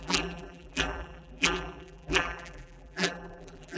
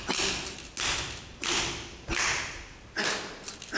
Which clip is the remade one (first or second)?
first